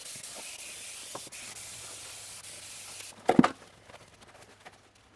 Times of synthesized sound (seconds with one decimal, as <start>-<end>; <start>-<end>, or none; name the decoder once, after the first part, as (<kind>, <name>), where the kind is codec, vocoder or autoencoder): none